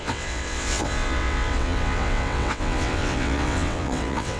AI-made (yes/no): yes